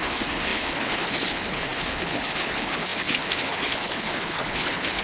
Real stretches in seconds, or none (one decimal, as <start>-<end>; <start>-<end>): none